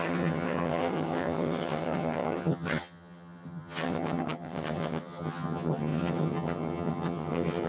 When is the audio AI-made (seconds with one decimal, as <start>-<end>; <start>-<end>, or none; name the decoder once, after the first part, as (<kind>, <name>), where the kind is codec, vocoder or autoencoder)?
0.0-7.7 (vocoder, HiFi-GAN)